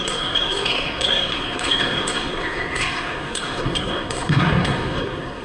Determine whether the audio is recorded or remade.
remade